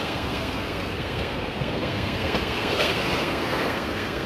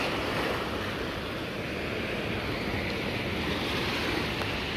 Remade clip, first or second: first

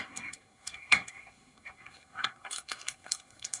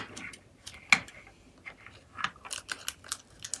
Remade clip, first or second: first